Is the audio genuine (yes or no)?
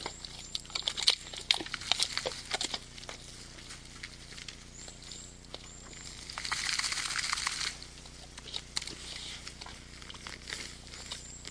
yes